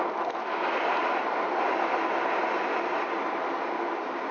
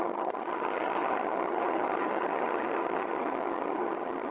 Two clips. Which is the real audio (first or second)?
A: first